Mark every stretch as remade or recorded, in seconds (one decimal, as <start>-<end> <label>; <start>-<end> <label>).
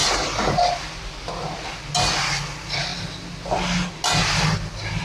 0.0-5.0 recorded